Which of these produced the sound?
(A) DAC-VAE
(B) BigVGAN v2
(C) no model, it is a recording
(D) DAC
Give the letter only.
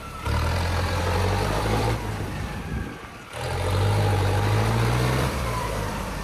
B